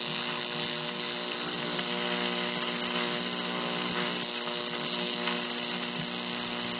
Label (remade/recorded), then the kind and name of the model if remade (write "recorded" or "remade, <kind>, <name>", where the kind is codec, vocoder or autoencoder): recorded